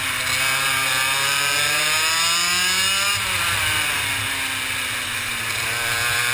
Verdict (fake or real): real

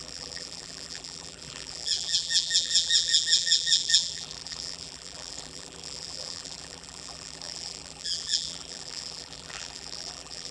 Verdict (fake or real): fake